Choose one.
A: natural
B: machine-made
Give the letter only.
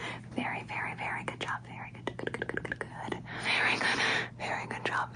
A